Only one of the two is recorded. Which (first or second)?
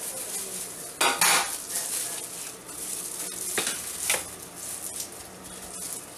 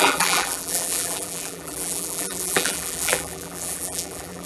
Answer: first